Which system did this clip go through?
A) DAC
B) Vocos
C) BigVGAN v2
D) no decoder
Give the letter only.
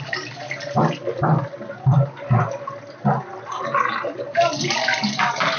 D